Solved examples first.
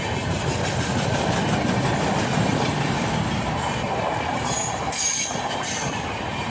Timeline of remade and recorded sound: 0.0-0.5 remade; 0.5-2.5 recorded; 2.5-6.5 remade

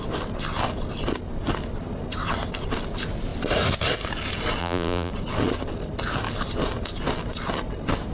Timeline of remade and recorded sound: 0.0-4.6 recorded; 4.6-5.1 remade; 5.1-8.1 recorded

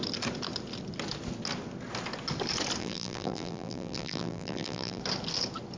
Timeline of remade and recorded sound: 0.0-2.8 recorded; 2.8-5.0 remade; 5.0-5.8 recorded

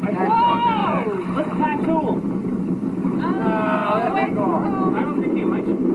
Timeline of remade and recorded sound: 0.0-5.9 recorded

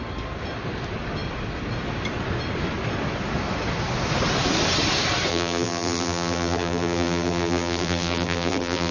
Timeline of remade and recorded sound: 0.0-5.3 recorded; 5.3-8.9 remade

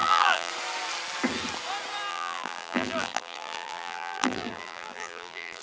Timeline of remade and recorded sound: 0.0-0.5 remade; 0.5-2.1 recorded; 2.1-5.6 remade

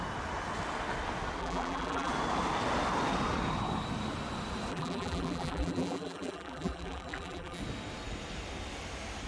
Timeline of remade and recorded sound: 0.0-1.4 recorded; 1.4-2.1 remade; 2.1-4.7 recorded; 4.7-7.6 remade; 7.6-9.3 recorded

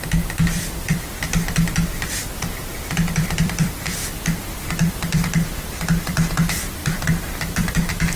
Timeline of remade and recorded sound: 0.0-1.1 remade; 1.1-2.8 recorded; 2.8-4.0 remade; 4.0-4.9 recorded; 4.9-8.2 remade